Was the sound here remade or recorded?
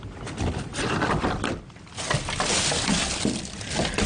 recorded